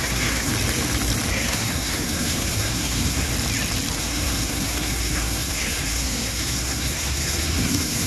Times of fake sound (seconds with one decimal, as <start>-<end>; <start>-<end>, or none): 0.0-0.5; 1.3-3.3; 4.0-8.1